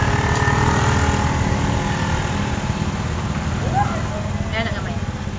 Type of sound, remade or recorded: recorded